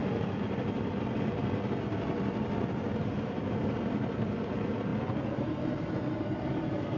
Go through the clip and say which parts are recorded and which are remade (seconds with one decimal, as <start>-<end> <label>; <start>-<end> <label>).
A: 0.0-7.0 recorded

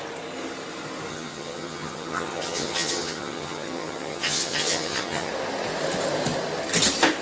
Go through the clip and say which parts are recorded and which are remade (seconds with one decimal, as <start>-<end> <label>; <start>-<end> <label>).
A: 0.0-1.1 recorded; 1.1-5.3 remade; 5.3-7.2 recorded

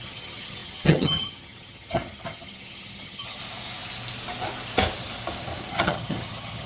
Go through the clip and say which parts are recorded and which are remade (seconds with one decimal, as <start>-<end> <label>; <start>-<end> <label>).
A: 0.0-3.4 remade; 3.4-5.7 recorded; 5.7-6.7 remade

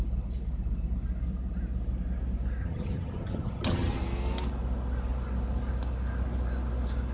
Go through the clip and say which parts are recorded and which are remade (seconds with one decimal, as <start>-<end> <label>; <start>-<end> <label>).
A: 0.0-2.6 recorded; 2.6-4.0 remade; 4.0-7.1 recorded